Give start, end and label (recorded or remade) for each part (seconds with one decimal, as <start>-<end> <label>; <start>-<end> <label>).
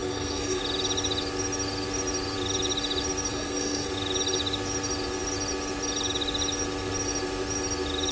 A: 0.0-0.6 remade; 0.6-3.3 recorded; 3.3-3.9 remade; 3.9-8.1 recorded